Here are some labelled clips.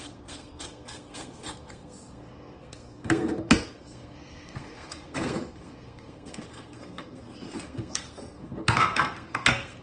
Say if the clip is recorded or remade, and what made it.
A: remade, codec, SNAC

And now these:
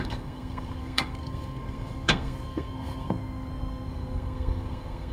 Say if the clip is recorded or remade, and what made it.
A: remade, codec, SNAC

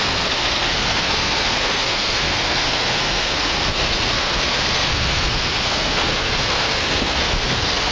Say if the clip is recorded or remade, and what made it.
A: remade, codec, SNAC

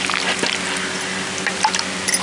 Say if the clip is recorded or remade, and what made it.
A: recorded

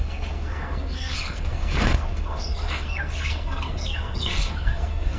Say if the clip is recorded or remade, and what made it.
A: remade, codec, SNAC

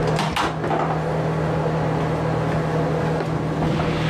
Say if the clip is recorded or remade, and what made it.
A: recorded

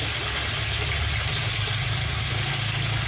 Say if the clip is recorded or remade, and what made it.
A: recorded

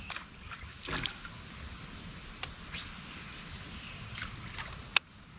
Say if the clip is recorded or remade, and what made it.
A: recorded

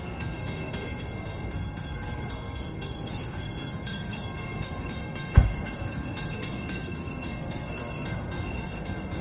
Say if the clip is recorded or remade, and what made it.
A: remade, codec, SNAC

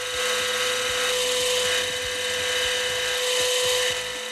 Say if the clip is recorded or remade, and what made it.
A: recorded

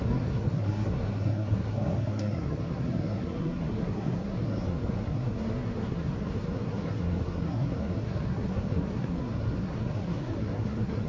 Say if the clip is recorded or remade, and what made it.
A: remade, codec, SNAC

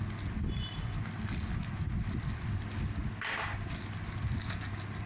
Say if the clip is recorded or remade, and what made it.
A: recorded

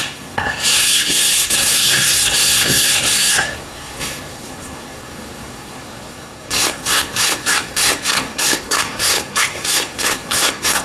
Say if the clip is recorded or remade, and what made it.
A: remade, codec, SNAC